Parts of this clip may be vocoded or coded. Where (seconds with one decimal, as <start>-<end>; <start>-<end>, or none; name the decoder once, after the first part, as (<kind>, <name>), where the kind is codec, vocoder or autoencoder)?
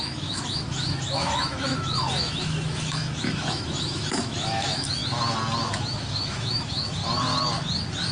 0.0-5.0 (autoencoder, DAC-VAE); 5.7-7.0